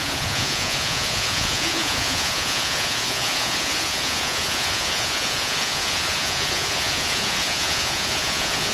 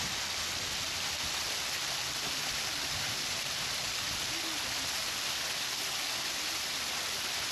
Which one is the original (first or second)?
second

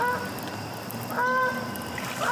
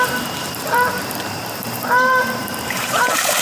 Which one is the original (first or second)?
first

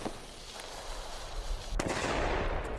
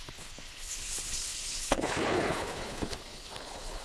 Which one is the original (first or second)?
first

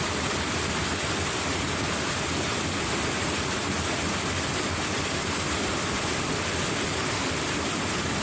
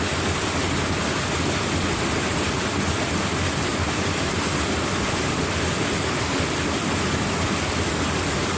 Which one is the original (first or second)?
second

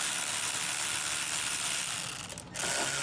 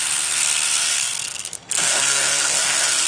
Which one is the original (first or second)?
first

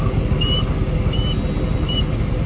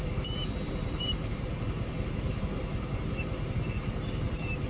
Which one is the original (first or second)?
first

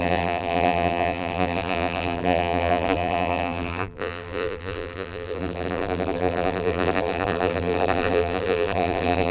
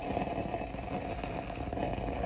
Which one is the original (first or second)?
second